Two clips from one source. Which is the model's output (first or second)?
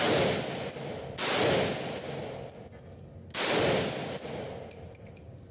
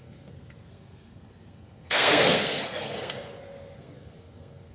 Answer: second